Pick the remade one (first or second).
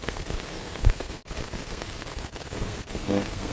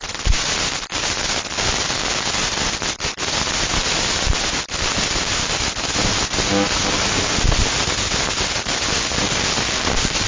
first